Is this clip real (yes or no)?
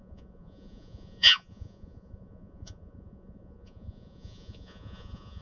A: no